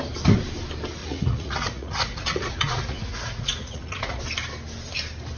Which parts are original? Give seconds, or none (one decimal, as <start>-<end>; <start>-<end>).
0.0-1.0; 4.2-5.4